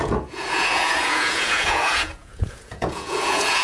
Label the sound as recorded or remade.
remade